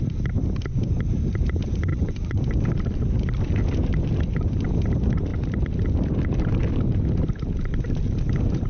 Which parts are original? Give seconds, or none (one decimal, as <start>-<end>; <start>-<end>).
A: 0.0-1.9; 2.4-8.7